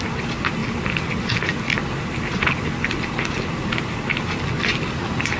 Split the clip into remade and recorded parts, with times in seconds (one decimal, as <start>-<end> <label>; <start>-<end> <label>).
0.0-4.7 recorded; 4.7-5.4 remade